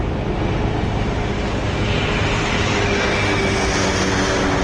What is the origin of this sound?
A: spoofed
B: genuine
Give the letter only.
B